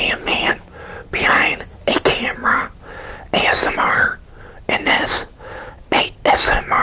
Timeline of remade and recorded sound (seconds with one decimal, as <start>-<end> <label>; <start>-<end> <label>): 0.0-0.6 remade; 0.6-6.8 recorded